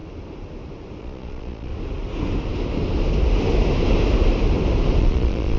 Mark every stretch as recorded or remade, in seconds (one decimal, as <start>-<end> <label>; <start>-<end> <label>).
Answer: 0.0-1.0 recorded; 1.0-1.7 remade; 1.7-5.0 recorded; 5.0-5.6 remade